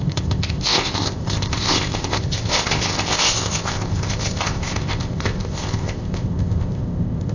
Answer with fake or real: fake